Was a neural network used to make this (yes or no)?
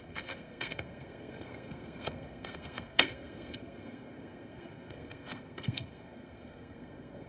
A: yes